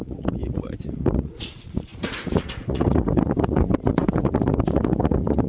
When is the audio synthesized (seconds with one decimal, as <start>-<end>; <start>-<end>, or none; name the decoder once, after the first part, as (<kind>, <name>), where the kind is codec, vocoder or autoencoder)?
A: 0.0-5.5 (vocoder, Vocos)